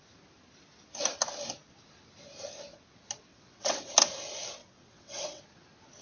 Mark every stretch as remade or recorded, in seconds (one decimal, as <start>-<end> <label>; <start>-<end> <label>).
0.0-3.3 recorded; 3.3-3.9 remade; 3.9-4.6 recorded; 4.6-5.4 remade; 5.4-6.0 recorded